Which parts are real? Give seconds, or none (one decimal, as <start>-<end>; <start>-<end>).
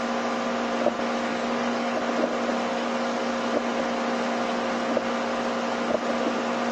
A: 0.0-1.3; 2.0-2.7; 3.2-6.7